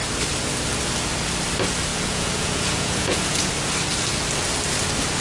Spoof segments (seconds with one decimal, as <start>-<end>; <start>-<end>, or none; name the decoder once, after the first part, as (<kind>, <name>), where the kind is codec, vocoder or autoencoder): 1.9-3.5 (vocoder, Vocos)